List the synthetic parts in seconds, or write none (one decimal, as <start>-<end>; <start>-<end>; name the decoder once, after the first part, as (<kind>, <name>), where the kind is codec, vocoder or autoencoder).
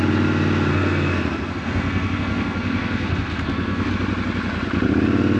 0.7-3.9 (codec, SNAC)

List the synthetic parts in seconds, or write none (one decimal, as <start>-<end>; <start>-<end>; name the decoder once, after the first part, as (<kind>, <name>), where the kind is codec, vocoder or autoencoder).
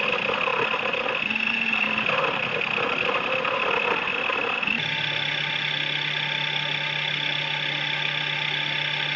none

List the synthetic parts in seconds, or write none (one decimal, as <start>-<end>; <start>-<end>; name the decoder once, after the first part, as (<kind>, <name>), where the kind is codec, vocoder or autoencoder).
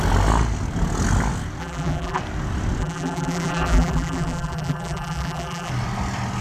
1.6-2.2 (vocoder, BigVGAN v2); 2.8-5.7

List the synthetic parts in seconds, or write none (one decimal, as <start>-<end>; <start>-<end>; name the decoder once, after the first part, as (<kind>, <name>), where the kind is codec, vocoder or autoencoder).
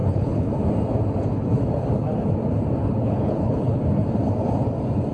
0.0-0.5 (codec, HILCodec); 2.8-3.8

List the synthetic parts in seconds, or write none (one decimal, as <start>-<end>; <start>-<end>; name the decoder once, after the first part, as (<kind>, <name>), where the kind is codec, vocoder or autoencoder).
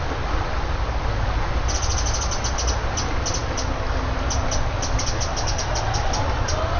none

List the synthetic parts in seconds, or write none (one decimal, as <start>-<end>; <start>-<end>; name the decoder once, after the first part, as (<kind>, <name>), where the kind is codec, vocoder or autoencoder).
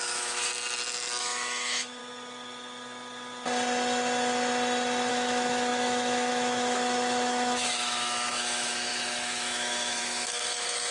0.0-0.5 (autoencoder, DAC-VAE); 1.2-2.0; 5.1-10.9